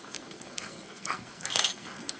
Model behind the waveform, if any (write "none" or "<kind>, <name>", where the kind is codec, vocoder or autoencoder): codec, SNAC